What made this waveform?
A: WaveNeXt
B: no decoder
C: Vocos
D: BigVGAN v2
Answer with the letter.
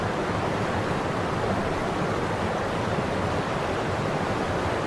D